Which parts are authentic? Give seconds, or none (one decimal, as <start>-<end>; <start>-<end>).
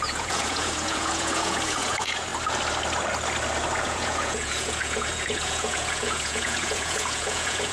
2.3-3.8